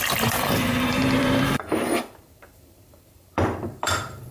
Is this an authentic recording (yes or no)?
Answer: no